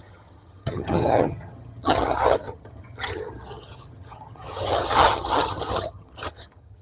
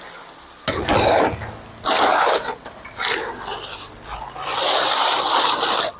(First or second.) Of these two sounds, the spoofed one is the first